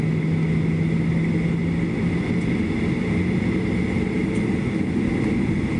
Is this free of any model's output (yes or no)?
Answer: yes